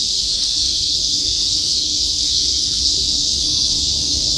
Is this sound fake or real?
fake